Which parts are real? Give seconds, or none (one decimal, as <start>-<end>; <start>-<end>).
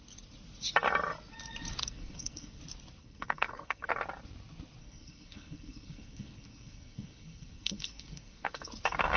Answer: 0.0-1.8; 2.6-3.0; 3.9-4.8; 8.7-9.2